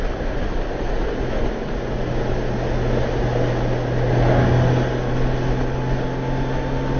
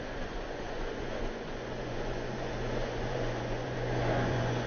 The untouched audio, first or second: first